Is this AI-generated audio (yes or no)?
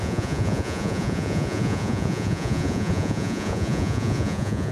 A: yes